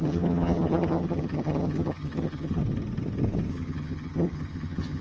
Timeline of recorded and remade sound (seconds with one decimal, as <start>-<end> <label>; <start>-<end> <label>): 0.0-2.6 remade; 2.6-3.5 recorded; 3.5-5.0 remade